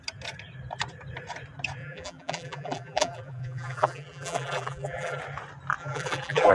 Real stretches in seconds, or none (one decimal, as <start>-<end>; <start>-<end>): 0.0-1.8; 5.2-5.8